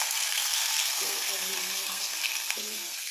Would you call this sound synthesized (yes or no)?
yes